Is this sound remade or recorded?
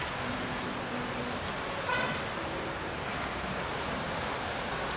recorded